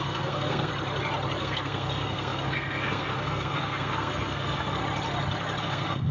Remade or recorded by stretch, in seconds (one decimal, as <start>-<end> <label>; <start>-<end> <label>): 0.0-0.7 remade; 0.7-1.4 recorded; 1.4-4.8 remade; 4.8-5.6 recorded; 5.6-6.1 remade